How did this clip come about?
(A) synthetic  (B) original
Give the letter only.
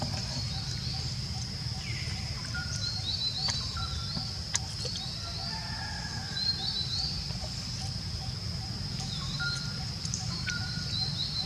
A